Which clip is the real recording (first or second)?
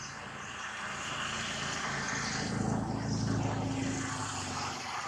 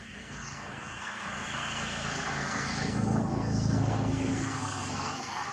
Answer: first